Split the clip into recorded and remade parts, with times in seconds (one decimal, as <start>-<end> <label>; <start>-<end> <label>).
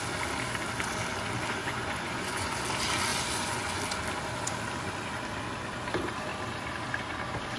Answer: 0.0-1.6 recorded; 1.6-2.6 remade; 2.6-3.1 recorded; 3.1-3.8 remade; 3.8-7.6 recorded